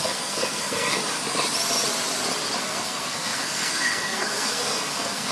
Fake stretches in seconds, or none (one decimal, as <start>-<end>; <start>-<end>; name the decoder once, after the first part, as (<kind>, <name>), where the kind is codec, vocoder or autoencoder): 0.0-1.0 (codec, SNAC); 2.6-5.3